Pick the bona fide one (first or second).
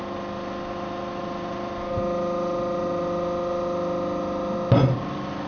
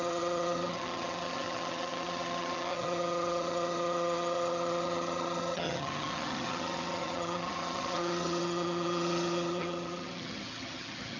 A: first